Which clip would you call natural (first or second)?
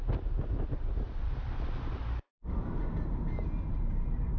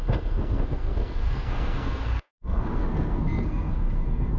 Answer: first